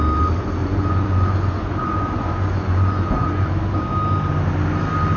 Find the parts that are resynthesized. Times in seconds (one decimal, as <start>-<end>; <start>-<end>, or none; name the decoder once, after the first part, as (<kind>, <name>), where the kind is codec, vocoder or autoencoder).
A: 0.6-3.5 (vocoder, Vocos)